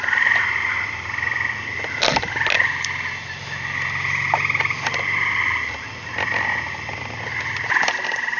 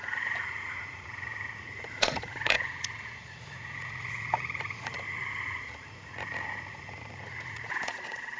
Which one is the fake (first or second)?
second